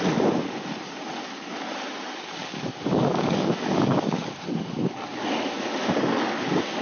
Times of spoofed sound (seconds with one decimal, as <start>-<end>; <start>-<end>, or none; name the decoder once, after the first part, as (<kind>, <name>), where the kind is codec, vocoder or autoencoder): 2.4-4.2 (codec, DAC)